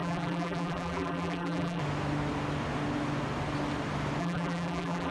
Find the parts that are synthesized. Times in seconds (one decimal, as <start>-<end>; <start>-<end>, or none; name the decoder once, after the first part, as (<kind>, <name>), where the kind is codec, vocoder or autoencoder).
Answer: 0.0-1.8 (vocoder, BigVGAN v2); 4.2-5.1